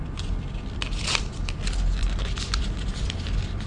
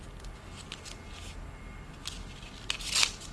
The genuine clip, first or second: second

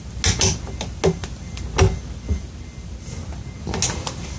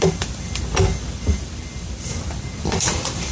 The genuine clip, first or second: first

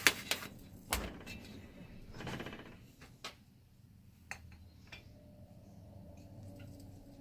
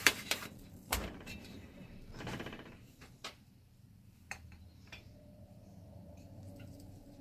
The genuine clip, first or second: first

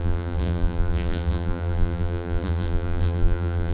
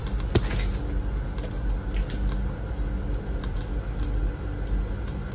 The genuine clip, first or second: second